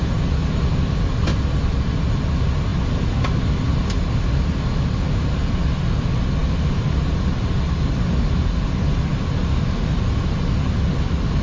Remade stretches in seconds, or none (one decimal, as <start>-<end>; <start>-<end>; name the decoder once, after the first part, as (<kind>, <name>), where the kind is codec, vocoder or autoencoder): none